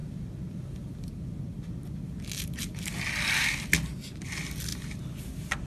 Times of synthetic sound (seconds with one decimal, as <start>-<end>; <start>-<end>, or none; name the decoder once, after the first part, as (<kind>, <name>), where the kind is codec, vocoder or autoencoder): none